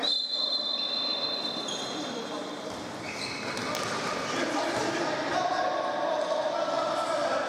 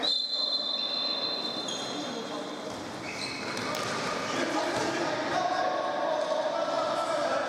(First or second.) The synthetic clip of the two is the first